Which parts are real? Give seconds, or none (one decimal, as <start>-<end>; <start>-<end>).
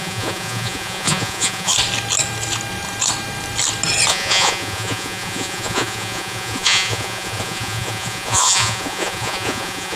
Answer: 1.7-4.1